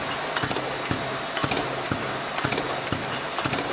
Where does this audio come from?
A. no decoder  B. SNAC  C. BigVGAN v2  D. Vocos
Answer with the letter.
A